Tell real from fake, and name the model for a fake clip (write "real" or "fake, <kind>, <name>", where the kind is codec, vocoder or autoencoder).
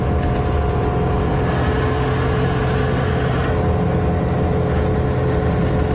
real